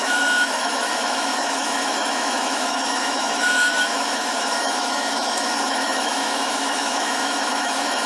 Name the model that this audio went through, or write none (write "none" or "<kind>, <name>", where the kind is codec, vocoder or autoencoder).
autoencoder, DAC-VAE